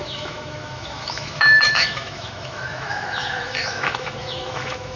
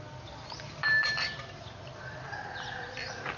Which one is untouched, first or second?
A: second